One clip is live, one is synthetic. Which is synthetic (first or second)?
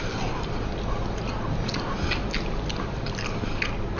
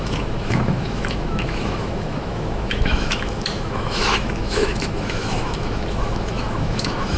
second